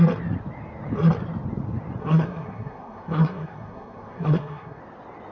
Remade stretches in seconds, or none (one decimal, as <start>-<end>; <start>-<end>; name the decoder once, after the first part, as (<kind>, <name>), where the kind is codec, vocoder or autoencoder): 2.0-4.8 (codec, SNAC)